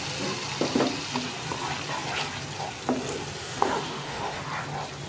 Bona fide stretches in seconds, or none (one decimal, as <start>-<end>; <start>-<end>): 0.0-3.4; 4.4-5.1